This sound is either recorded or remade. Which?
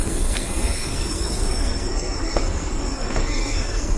remade